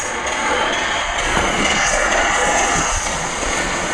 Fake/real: fake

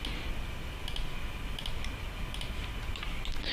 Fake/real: real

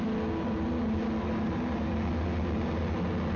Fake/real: real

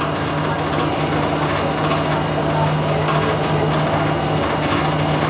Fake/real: real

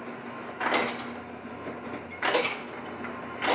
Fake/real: real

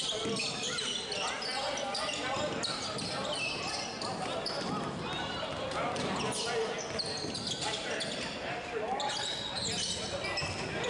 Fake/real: real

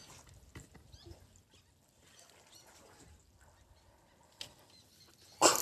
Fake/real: real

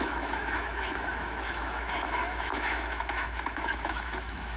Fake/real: fake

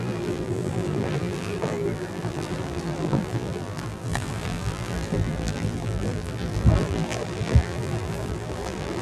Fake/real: fake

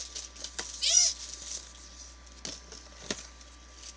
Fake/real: real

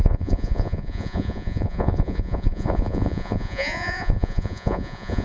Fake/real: fake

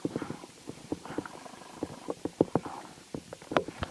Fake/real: fake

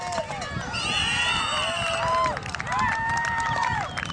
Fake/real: real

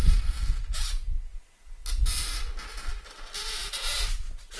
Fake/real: real